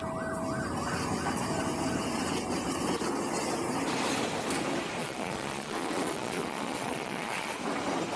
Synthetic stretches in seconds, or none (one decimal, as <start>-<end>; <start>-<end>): 5.0-7.5

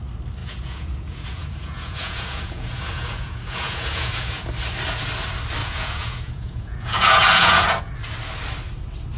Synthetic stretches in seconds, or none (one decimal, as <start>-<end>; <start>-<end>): 0.4-4.5; 5.6-7.8

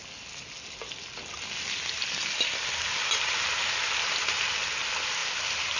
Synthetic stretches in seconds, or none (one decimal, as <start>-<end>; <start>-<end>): none